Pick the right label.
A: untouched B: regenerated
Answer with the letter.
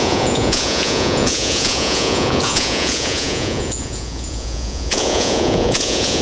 B